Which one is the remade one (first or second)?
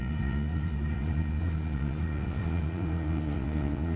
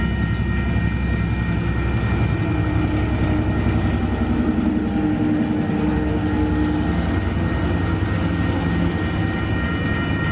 first